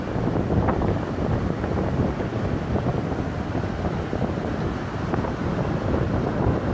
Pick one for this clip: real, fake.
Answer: real